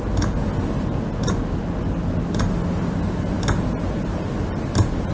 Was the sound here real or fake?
real